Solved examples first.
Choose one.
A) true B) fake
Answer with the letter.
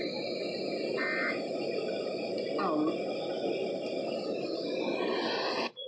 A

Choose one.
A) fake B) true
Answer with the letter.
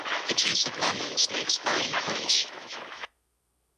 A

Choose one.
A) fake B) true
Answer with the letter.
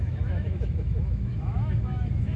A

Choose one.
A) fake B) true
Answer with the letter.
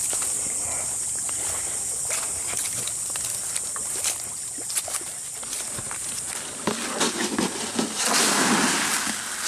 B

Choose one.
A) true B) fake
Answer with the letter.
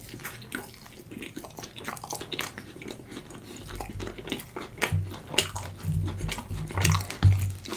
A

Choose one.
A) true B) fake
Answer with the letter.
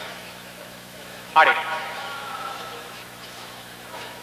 B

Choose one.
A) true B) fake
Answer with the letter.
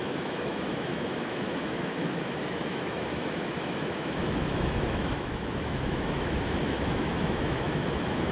B